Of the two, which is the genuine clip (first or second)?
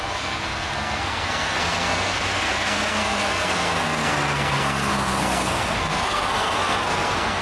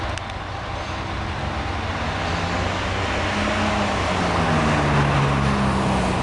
second